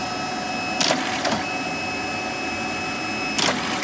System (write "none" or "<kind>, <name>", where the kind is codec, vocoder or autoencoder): none